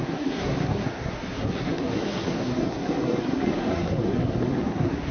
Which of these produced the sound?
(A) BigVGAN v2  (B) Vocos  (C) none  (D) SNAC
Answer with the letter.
D